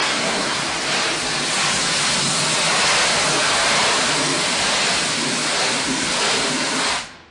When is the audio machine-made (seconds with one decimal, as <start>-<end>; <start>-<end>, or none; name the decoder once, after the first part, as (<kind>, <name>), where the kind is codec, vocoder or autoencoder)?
0.0-0.6 (codec, SNAC)